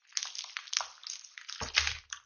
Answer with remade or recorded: recorded